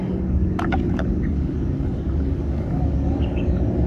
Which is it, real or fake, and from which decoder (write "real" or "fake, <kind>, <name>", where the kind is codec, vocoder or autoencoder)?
fake, codec, DAC